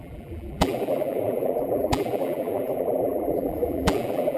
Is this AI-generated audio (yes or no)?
yes